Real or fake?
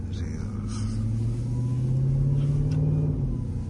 real